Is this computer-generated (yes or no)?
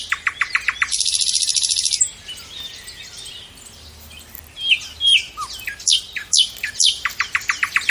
no